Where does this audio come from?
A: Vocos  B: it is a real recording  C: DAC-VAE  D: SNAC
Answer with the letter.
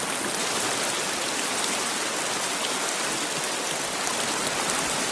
B